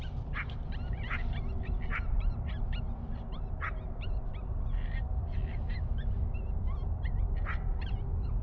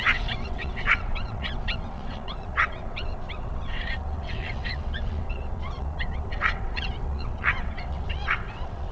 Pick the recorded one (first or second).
first